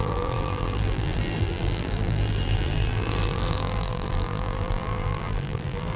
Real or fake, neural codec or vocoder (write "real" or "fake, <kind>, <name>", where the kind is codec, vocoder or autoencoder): fake, vocoder, BigVGAN v2